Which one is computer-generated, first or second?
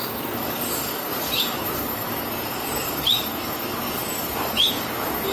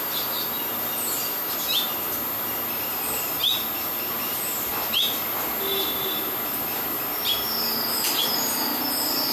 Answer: first